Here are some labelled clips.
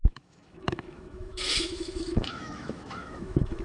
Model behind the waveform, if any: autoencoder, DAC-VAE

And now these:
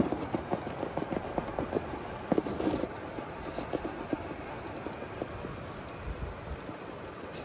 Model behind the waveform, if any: none